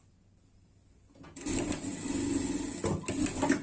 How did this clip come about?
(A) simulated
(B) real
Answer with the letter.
B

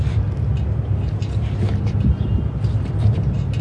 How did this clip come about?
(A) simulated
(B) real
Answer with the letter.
B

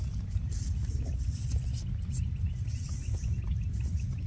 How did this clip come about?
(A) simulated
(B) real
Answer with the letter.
B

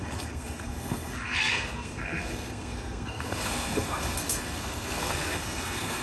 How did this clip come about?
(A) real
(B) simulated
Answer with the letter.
B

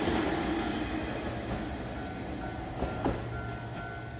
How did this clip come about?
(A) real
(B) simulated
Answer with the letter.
A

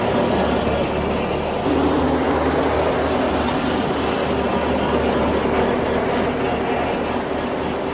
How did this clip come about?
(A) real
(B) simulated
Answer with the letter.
A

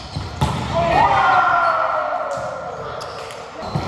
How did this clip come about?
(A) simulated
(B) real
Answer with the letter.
B